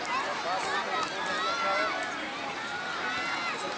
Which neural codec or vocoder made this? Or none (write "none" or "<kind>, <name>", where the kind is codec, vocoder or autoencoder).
none